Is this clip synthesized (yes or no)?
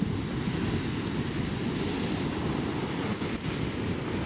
no